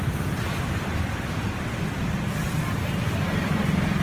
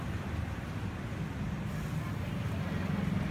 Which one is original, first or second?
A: second